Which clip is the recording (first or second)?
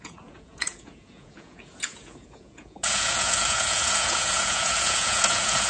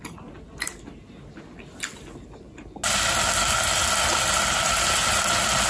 second